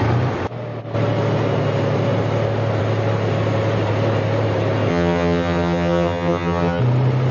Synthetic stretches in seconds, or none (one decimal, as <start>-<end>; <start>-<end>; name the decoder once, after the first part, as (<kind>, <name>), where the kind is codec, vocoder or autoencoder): 4.9-6.8 (vocoder, HiFi-GAN)